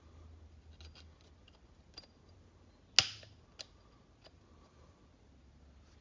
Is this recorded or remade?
recorded